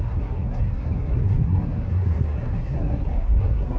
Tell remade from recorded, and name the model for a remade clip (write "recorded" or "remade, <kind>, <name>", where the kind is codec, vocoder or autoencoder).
remade, codec, SNAC